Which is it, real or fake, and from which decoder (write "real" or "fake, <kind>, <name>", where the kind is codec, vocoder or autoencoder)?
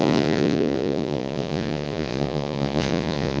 fake, vocoder, Vocos